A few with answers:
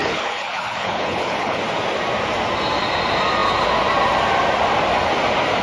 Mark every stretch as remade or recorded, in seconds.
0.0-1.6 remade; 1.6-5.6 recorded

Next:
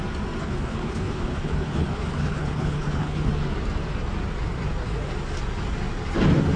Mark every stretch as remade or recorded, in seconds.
0.0-0.4 recorded; 0.4-3.3 remade; 3.3-6.6 recorded

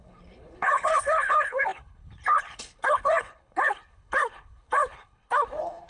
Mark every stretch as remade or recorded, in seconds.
0.0-5.9 remade

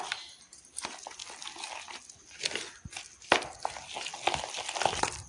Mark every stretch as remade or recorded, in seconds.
0.0-5.3 recorded

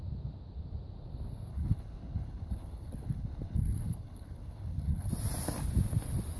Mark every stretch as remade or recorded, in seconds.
0.0-1.5 recorded; 1.5-5.1 remade; 5.1-6.4 recorded

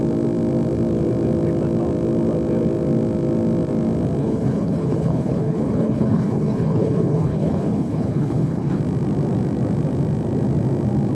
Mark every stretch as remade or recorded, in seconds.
0.0-4.2 recorded; 4.2-8.8 remade; 8.8-11.1 recorded

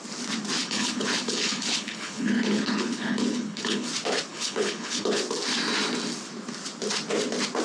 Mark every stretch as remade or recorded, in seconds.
0.0-0.6 recorded; 0.6-3.9 remade; 3.9-4.3 recorded; 4.3-5.2 remade; 5.2-7.6 recorded